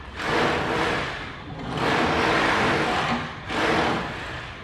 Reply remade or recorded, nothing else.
recorded